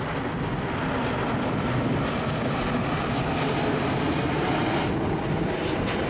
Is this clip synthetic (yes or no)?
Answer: no